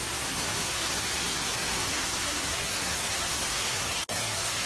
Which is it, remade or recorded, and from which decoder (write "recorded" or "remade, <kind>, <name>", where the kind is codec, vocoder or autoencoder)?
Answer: remade, codec, SNAC